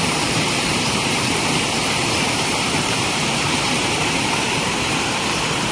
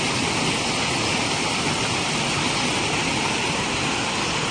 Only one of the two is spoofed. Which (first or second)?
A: first